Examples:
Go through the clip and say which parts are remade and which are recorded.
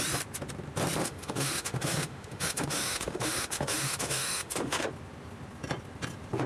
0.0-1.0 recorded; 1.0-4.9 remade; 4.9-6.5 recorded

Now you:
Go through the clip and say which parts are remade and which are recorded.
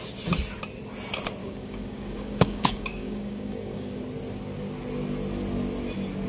0.0-1.4 recorded; 1.4-4.0 remade; 4.0-6.3 recorded